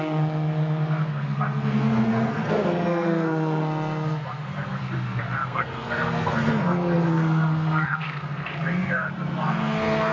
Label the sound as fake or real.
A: fake